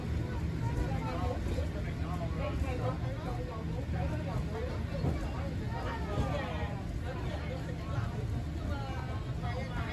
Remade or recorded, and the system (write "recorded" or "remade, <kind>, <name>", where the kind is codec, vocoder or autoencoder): recorded